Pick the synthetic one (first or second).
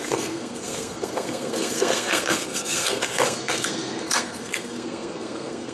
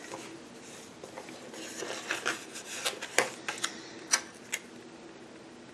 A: first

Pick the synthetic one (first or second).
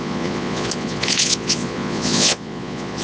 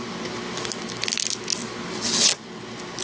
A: first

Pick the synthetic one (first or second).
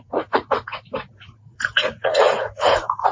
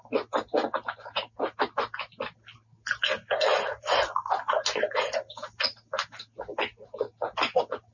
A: first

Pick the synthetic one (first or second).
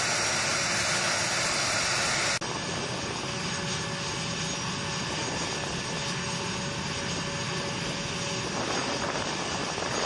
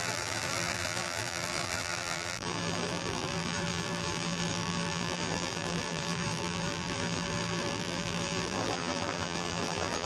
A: second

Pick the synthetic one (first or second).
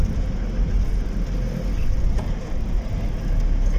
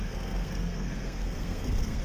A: second